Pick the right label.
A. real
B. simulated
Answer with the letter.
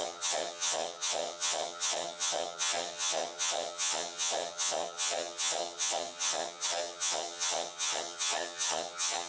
B